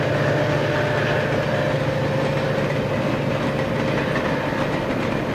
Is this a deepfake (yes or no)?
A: no